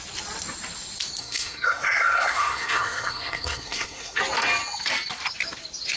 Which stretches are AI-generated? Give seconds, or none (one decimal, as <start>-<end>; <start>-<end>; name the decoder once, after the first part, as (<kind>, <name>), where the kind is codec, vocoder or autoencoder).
1.2-4.2 (codec, SNAC)